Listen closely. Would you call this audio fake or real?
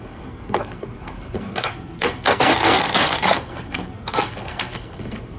fake